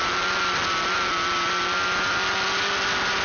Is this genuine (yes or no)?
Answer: yes